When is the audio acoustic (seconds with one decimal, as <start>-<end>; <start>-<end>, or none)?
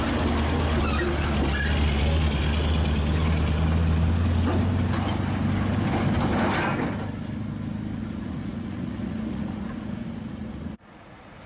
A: 0.0-8.0